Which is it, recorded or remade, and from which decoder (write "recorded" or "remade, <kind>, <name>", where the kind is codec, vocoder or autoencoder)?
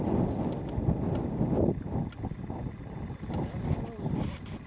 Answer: recorded